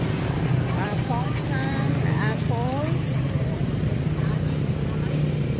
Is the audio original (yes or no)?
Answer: yes